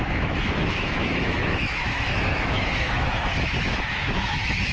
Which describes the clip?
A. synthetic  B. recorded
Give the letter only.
A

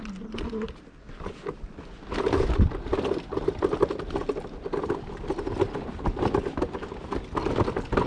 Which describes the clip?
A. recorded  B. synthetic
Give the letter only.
A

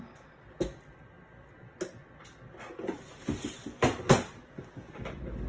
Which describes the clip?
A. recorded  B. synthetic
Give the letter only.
A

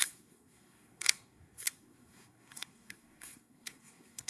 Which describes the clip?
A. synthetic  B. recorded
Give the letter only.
A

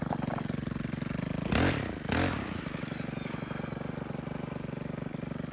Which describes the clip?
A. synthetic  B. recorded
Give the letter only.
B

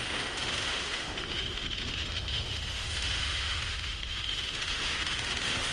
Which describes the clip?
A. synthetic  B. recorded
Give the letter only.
A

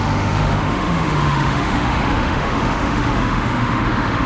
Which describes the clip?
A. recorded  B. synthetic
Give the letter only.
B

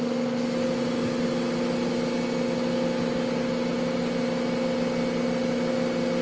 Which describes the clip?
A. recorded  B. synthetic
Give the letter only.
A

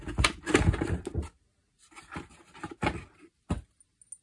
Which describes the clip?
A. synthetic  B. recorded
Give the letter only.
B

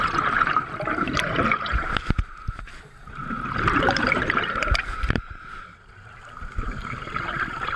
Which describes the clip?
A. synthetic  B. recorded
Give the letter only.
A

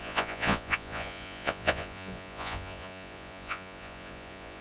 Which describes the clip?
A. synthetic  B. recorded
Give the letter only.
A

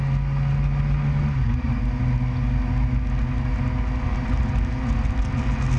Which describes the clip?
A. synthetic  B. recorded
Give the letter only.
B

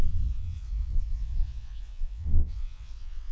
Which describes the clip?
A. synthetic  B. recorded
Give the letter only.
A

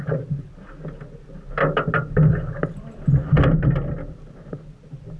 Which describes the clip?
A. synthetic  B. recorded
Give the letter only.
B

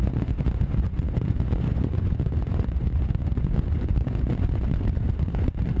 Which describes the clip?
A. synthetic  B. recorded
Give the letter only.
A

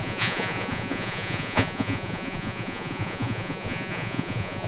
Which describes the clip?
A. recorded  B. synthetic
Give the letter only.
B